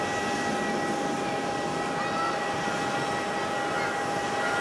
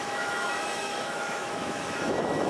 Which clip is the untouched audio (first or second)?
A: first